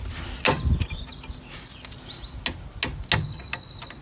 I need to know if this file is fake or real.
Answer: real